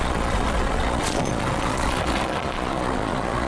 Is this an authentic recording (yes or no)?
no